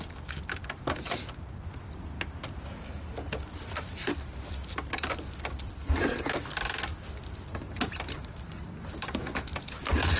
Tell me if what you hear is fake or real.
real